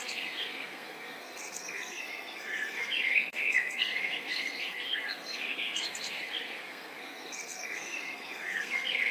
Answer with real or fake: fake